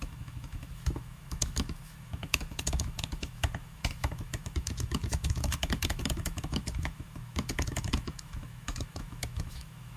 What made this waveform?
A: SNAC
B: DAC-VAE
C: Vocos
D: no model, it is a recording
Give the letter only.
B